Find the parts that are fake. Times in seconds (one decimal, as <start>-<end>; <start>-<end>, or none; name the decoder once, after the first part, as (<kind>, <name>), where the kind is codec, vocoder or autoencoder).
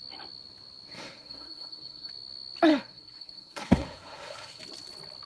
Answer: 0.9-2.1 (codec, SNAC); 2.7-4.6